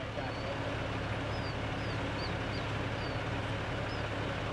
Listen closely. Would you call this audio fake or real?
real